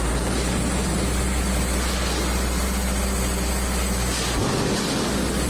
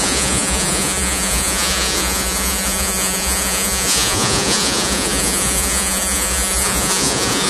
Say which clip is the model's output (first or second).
second